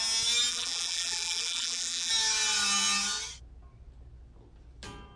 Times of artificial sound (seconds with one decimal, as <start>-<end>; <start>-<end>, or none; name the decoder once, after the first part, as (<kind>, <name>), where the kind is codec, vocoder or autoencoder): 0.5-2.1 (vocoder, BigVGAN v2)